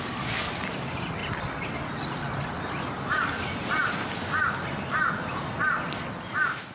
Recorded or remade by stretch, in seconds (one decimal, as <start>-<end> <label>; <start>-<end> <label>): 0.0-6.7 recorded